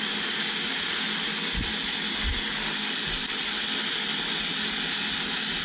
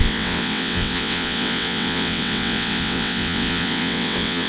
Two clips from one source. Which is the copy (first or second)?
second